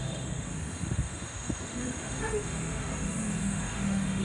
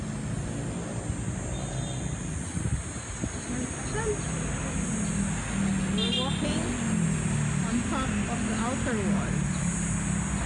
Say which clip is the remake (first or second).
first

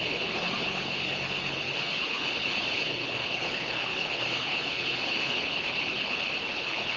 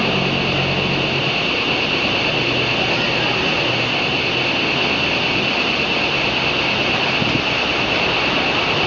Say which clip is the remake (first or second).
first